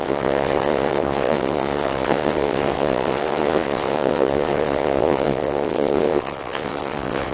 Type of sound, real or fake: fake